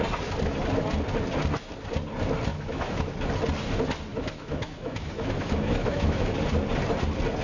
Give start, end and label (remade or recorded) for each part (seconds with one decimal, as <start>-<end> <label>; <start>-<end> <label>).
0.0-2.5 recorded; 2.5-3.1 remade; 3.1-4.1 recorded; 4.1-6.3 remade; 6.3-7.4 recorded